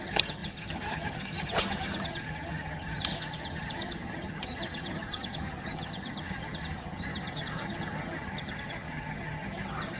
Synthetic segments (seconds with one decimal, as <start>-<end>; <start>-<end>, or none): 0.0-10.0